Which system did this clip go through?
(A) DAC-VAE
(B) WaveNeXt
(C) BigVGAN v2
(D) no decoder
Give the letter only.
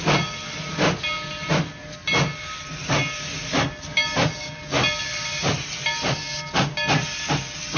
D